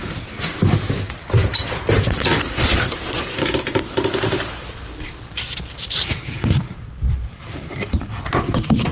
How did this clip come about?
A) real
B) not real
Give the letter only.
B